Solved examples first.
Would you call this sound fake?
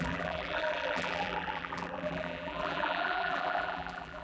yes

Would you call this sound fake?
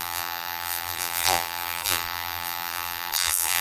yes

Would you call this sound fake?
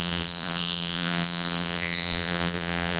yes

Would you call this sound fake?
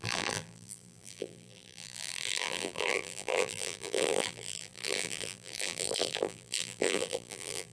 yes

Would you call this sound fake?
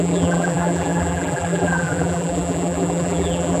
yes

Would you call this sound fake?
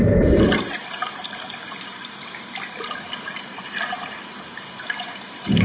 yes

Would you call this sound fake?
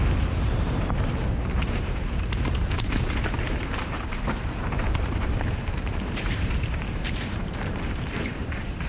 yes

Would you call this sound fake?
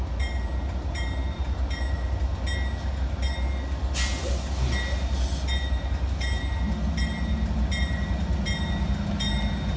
no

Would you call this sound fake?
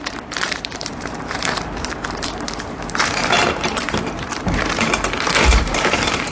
yes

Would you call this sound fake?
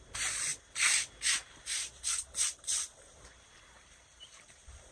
no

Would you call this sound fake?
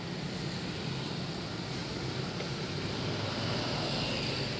no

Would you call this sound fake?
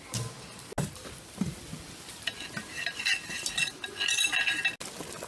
no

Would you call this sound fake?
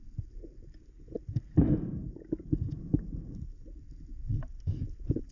no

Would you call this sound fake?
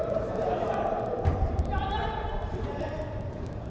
yes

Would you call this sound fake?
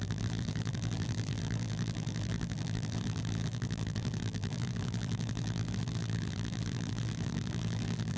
yes